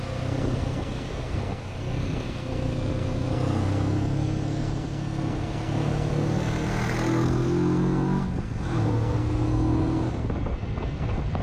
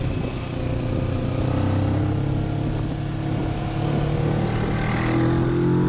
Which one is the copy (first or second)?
first